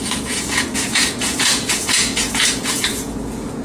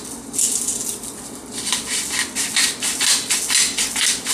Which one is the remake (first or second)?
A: first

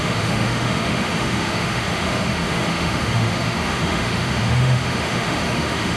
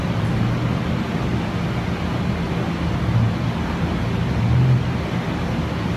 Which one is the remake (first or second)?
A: first